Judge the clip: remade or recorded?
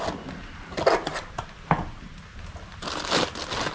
recorded